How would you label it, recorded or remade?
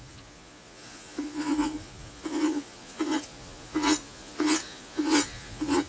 remade